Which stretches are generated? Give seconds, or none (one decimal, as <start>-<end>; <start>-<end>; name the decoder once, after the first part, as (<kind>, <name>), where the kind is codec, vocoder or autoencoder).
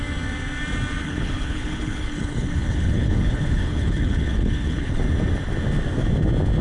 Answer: 1.0-5.0 (codec, HILCodec)